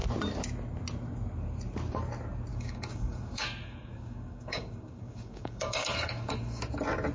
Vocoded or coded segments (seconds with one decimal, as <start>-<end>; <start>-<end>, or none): 2.5-6.6